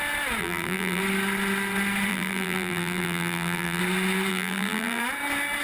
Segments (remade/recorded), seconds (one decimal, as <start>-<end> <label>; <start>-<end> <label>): 0.0-0.4 recorded; 0.4-1.0 remade; 1.0-2.1 recorded; 2.1-3.8 remade; 3.8-4.3 recorded; 4.3-5.0 remade; 5.0-5.6 recorded